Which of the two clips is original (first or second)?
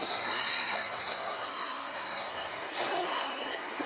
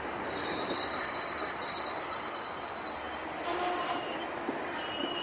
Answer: second